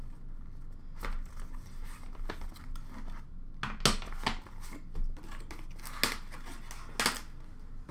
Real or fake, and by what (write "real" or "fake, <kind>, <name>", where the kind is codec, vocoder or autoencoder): real